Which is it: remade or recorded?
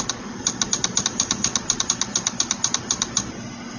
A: recorded